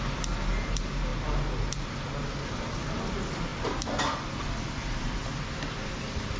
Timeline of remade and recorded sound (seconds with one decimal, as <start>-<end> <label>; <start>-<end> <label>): 0.0-6.4 recorded